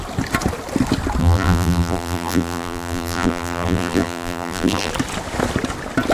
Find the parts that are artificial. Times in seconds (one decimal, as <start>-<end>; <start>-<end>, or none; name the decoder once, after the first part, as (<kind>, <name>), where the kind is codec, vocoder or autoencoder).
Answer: 1.2-4.9 (vocoder, BigVGAN v2)